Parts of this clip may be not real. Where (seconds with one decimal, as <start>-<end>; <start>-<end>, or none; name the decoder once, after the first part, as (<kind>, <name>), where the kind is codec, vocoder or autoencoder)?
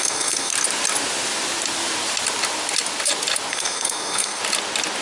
0.0-0.5 (codec, SNAC); 3.5-4.4